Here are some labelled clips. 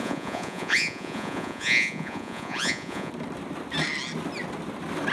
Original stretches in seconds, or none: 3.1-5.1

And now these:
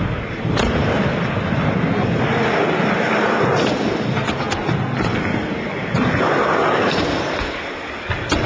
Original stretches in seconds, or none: 0.0-8.5

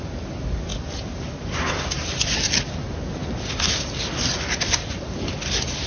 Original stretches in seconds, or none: 0.0-5.9

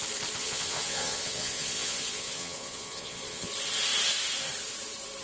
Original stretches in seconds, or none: 0.0-0.4; 3.5-5.2

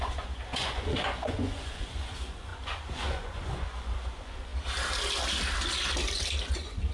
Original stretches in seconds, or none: 4.5-6.5